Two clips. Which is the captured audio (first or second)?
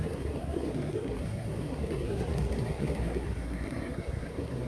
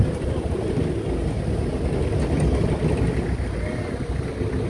second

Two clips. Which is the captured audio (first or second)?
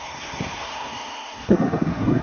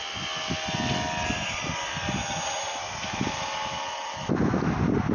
second